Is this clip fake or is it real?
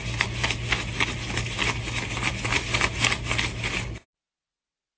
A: real